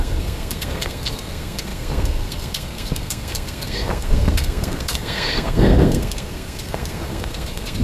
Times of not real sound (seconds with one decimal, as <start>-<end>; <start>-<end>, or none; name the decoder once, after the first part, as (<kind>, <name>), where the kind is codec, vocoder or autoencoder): 0.0-7.8 (codec, SNAC)